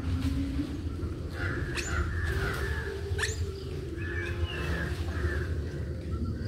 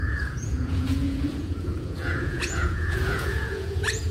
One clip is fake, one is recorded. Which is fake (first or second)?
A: second